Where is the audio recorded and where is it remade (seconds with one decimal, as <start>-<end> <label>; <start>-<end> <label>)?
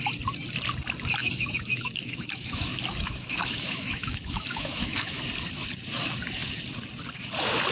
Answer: 0.0-1.2 recorded; 1.2-5.2 remade; 5.2-7.7 recorded